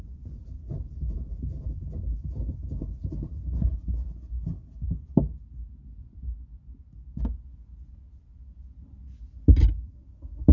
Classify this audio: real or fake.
real